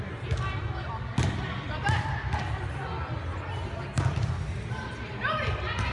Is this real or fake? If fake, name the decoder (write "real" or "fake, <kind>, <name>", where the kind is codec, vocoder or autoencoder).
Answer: real